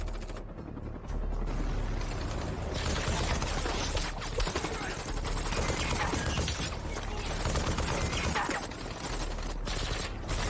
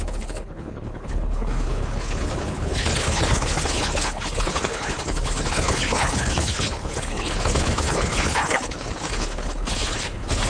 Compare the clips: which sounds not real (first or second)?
second